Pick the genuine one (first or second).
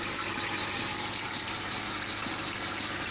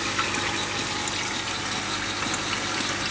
second